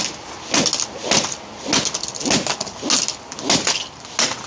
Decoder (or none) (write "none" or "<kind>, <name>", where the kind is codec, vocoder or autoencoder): none